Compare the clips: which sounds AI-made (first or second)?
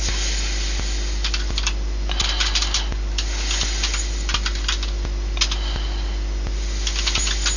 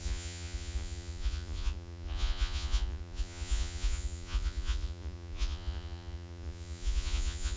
second